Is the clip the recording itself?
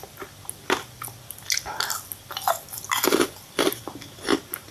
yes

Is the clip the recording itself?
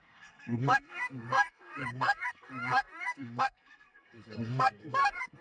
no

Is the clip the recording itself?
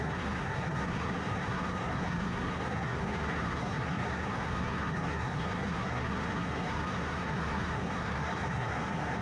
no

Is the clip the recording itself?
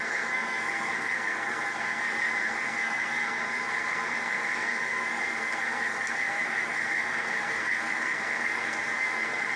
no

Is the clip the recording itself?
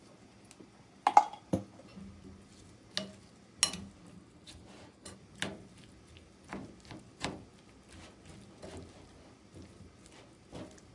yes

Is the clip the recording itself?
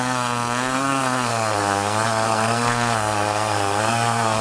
no